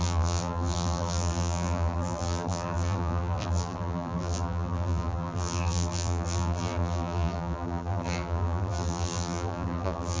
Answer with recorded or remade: remade